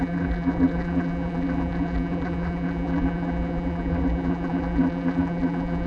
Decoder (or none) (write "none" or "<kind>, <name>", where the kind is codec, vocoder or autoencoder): vocoder, BigVGAN v2